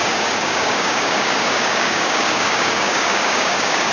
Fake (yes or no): yes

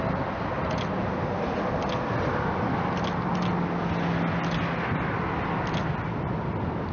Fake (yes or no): no